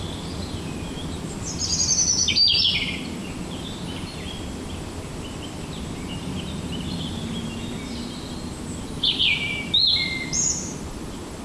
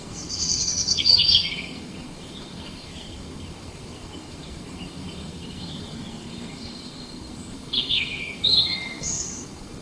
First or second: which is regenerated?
second